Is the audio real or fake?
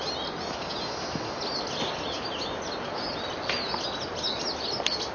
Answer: real